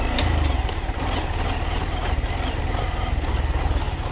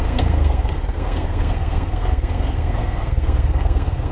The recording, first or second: first